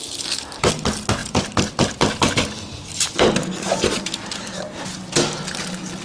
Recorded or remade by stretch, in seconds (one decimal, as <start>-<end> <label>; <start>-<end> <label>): 0.0-0.7 remade; 0.7-1.2 recorded; 1.2-4.8 remade; 4.8-6.0 recorded